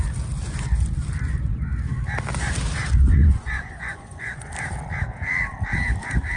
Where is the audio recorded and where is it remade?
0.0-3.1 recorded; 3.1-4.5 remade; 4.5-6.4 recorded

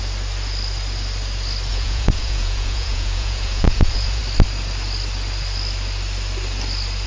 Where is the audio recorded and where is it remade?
0.0-1.7 recorded; 1.7-4.2 remade; 4.2-7.1 recorded

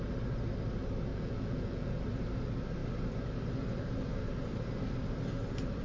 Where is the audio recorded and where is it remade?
0.0-1.1 recorded; 1.1-2.0 remade; 2.0-5.8 recorded

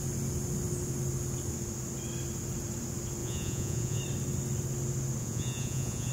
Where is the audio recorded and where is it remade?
0.0-3.2 recorded; 3.2-4.0 remade; 4.0-5.2 recorded; 5.2-6.1 remade

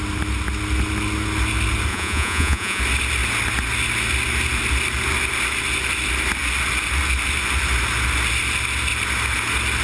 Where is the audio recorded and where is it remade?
0.0-1.9 recorded; 1.9-2.8 remade; 2.8-9.8 recorded

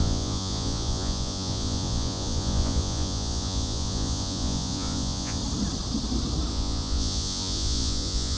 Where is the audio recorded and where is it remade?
0.0-5.4 remade; 5.4-6.5 recorded; 6.5-8.4 remade

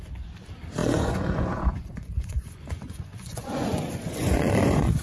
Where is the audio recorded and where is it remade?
0.0-0.8 recorded; 0.8-3.8 remade; 3.8-4.2 recorded; 4.2-5.0 remade